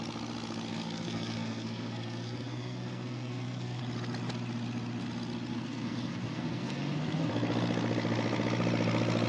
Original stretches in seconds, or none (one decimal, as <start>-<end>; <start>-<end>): 0.0-0.7; 3.8-5.5; 7.3-9.3